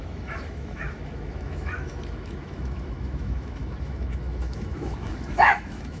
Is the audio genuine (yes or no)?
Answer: no